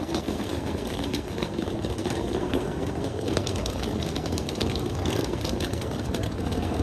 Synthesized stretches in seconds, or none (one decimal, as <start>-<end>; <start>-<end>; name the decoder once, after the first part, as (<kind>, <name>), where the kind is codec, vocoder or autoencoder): 0.0-6.8 (codec, SNAC)